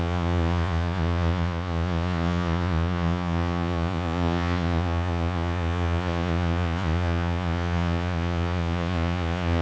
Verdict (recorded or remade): remade